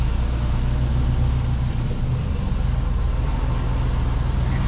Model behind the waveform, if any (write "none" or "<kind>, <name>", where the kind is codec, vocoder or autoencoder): none